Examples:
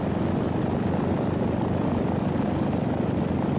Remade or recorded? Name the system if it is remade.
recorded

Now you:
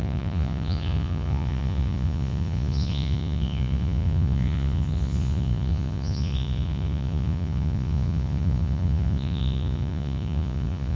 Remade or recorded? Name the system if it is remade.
remade, vocoder, Vocos